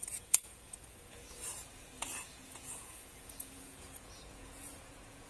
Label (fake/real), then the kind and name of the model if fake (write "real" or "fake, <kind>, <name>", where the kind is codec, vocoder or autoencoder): fake, vocoder, Vocos